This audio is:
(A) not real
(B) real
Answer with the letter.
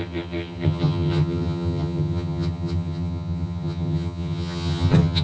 A